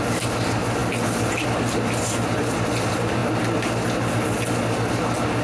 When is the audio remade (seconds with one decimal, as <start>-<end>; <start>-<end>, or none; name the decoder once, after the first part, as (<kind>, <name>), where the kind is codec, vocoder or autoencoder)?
none